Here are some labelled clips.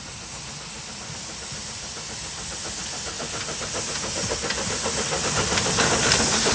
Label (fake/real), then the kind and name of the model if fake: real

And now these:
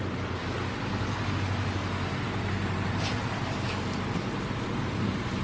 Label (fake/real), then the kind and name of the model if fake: real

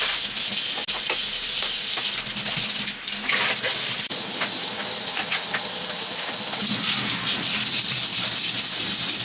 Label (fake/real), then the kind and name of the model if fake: real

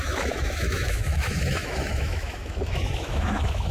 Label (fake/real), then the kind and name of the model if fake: fake, autoencoder, DAC-VAE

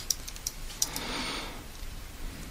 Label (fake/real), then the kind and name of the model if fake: fake, vocoder, BigVGAN v2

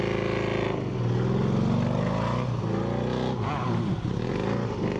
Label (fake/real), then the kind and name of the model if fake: real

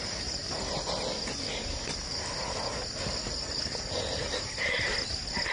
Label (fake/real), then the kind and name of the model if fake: real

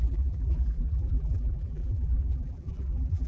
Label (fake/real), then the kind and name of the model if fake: fake, vocoder, BigVGAN v2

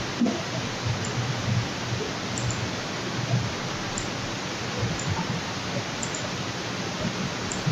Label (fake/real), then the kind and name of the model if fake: real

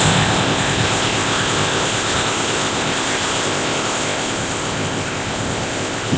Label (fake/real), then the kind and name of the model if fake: fake, codec, ZipCodec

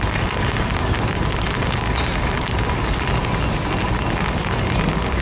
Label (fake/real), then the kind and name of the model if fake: real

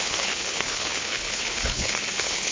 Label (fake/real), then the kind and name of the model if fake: fake, codec, HILCodec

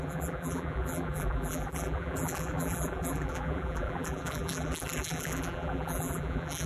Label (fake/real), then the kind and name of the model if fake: fake, vocoder, BigVGAN v2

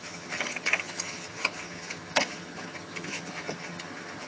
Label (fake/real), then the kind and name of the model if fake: fake, vocoder, HiFi-GAN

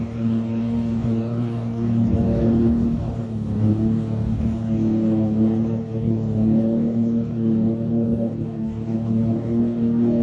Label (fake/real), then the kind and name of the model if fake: fake, codec, DAC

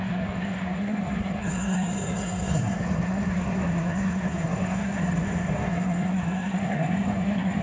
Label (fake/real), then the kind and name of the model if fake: fake, codec, SNAC